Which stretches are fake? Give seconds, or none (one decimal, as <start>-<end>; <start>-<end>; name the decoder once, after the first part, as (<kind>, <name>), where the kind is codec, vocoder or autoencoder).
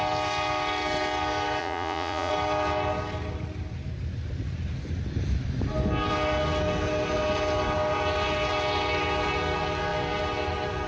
1.6-2.3 (vocoder, Vocos)